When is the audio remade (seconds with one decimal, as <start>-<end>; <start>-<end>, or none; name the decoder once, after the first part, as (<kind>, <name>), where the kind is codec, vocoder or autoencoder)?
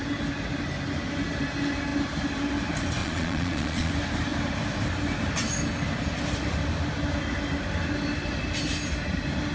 3.0-3.9 (vocoder, Vocos)